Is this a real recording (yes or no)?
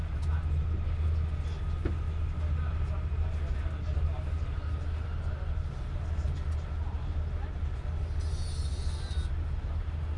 yes